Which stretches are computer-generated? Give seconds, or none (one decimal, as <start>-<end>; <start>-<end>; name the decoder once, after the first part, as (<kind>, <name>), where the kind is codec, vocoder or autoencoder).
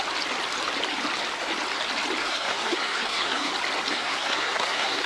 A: 2.2-3.5 (codec, SNAC); 3.9-5.1